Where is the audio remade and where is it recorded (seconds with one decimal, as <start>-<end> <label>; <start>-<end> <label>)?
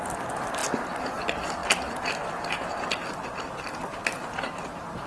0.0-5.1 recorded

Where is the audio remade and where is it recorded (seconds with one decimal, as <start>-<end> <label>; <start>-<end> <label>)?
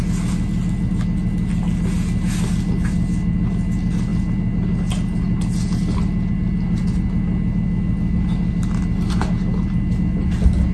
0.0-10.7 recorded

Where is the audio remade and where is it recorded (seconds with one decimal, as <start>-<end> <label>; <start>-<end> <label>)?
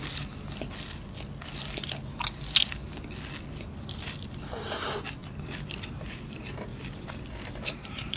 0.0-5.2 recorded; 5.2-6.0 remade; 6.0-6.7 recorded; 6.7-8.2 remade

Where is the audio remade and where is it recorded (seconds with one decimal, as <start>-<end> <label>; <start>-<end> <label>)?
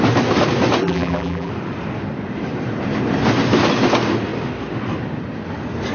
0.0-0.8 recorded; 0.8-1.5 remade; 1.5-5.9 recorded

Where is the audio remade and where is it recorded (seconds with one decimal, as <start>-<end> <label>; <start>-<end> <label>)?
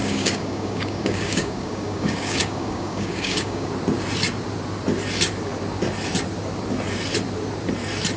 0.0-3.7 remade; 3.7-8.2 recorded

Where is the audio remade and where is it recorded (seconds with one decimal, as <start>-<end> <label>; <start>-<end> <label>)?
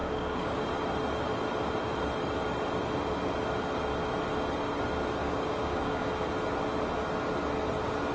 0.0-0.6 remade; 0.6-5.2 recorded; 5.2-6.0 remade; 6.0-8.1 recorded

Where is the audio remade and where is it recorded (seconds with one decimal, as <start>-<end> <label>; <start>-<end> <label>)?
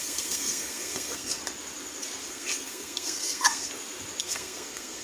0.0-1.4 remade; 1.4-2.3 recorded; 2.3-3.7 remade; 3.7-4.2 recorded; 4.2-5.0 remade